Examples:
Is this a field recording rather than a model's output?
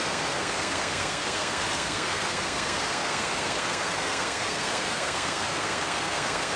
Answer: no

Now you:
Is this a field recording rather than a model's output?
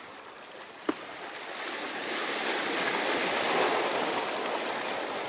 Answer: yes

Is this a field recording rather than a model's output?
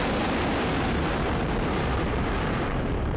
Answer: no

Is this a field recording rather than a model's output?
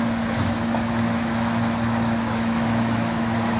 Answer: no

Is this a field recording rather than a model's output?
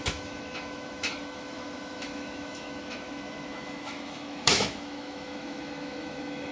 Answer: no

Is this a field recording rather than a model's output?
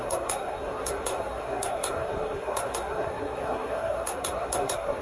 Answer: no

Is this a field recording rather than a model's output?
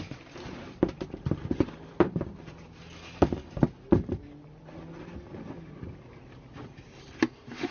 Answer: yes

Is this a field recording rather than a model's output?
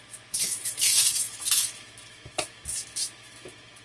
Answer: no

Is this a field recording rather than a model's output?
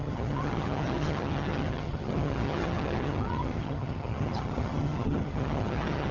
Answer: no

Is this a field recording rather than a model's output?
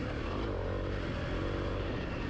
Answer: yes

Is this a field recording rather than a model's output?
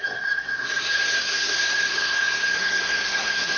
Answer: no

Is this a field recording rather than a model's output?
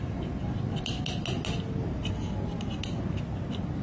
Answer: yes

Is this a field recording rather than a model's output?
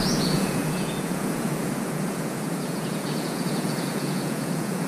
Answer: no